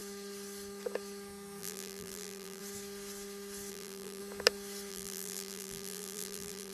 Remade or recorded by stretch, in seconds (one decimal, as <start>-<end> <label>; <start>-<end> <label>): 0.0-1.6 recorded; 1.6-2.6 remade; 2.6-3.7 recorded; 3.7-4.2 remade; 4.2-4.9 recorded; 4.9-6.7 remade